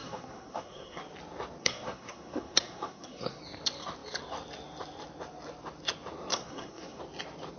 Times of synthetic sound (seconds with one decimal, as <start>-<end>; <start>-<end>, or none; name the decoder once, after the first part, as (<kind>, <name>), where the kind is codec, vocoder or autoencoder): 0.0-1.0 (codec, SNAC); 1.6-3.4; 6.3-7.0